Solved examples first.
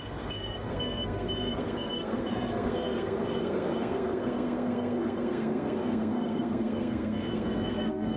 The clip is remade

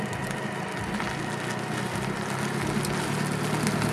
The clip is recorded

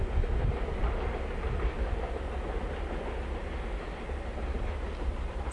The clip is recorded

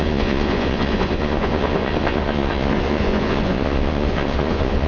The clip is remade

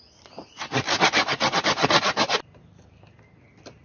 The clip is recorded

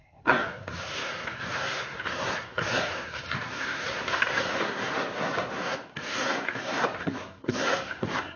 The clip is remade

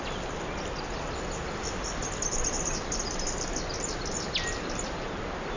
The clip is recorded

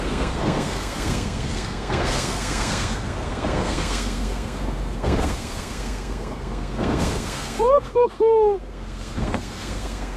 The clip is remade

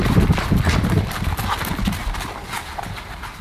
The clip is recorded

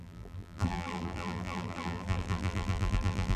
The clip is remade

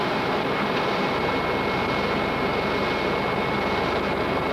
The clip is recorded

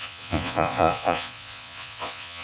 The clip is remade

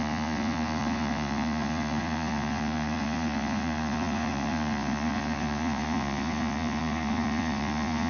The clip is remade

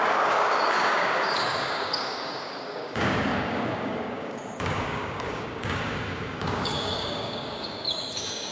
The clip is remade